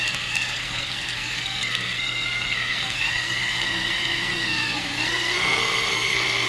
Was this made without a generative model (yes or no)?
no